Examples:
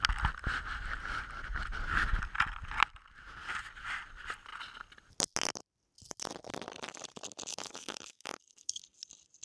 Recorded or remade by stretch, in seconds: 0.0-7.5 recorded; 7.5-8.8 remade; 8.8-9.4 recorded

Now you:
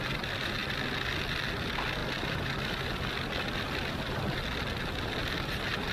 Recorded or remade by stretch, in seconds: 0.0-5.9 recorded

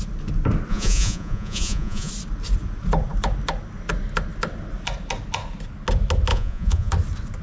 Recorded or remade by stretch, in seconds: 0.0-0.7 recorded; 0.7-2.1 remade; 2.1-6.3 recorded; 6.3-6.9 remade; 6.9-7.4 recorded

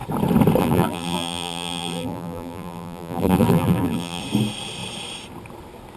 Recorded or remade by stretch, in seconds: 0.0-0.6 recorded; 0.6-4.2 remade; 4.2-6.0 recorded

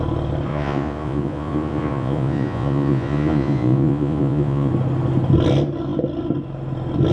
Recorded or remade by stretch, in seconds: 0.0-0.5 recorded; 0.5-4.7 remade; 4.7-7.1 recorded

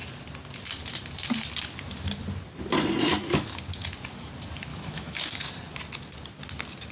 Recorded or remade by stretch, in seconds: 0.0-3.1 recorded; 3.1-3.6 remade; 3.6-4.7 recorded; 4.7-5.5 remade; 5.5-6.9 recorded

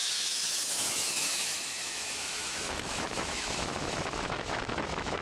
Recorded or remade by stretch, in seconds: 0.0-5.2 remade

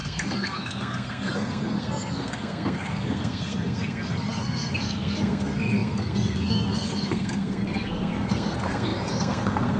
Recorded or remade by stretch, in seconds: 0.0-9.8 remade